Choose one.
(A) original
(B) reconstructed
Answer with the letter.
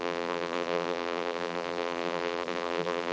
B